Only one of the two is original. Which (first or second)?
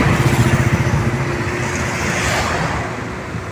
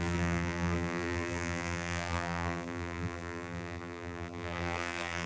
first